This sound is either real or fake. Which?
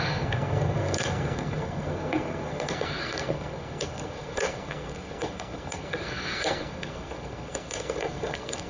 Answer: fake